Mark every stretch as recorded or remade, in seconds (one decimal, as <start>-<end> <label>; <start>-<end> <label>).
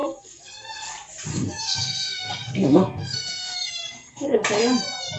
0.0-0.9 remade; 0.9-1.3 recorded; 1.3-4.4 remade; 4.4-5.2 recorded